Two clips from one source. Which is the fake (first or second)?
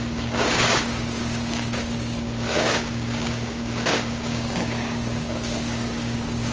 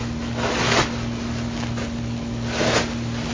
first